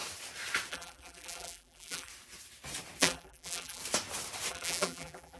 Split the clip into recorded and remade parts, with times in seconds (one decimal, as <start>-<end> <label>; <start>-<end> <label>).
0.0-0.7 recorded; 0.7-2.1 remade; 2.1-3.0 recorded; 3.0-3.8 remade; 3.8-4.5 recorded; 4.5-5.4 remade